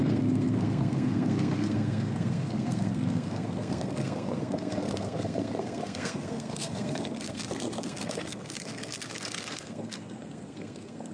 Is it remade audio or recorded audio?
remade